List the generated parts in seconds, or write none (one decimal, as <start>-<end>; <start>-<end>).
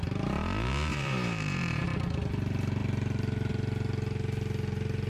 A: 0.9-1.8